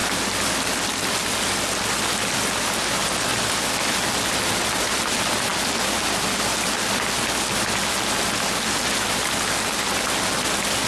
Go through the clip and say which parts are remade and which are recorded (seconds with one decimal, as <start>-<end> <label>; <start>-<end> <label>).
0.0-10.9 recorded